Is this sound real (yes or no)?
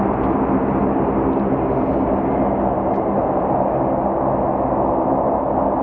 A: yes